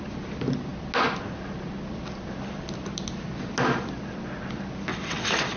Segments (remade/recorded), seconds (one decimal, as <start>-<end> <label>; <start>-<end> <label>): 0.0-4.9 recorded; 4.9-5.6 remade